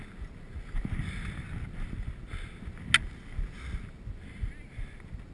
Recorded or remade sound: recorded